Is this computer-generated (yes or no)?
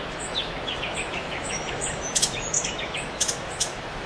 yes